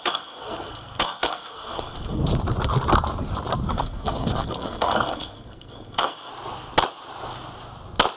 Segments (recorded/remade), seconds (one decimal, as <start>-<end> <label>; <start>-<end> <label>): 0.0-2.2 remade; 2.2-3.7 recorded; 3.7-6.3 remade; 6.3-8.2 recorded